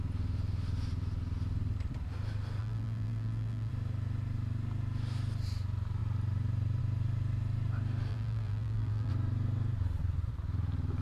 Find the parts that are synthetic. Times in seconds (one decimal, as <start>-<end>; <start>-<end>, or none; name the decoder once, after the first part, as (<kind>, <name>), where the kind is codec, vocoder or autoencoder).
2.6-3.7 (vocoder, BigVGAN v2); 8.1-9.1